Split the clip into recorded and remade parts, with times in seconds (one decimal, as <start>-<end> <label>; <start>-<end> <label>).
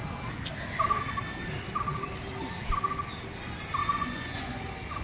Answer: 0.0-3.8 recorded; 3.8-4.6 remade; 4.6-5.0 recorded